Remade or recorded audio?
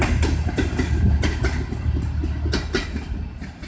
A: recorded